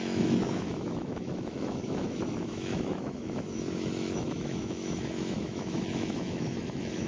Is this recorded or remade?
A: remade